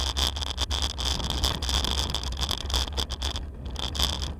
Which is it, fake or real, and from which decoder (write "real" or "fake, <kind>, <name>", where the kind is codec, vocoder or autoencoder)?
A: real